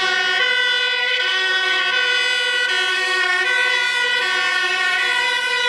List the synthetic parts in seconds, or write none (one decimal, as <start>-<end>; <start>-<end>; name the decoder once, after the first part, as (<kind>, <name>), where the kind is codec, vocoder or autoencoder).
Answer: 1.0-1.8 (codec, SNAC); 2.9-3.4